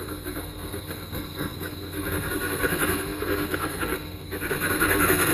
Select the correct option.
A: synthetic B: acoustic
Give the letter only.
A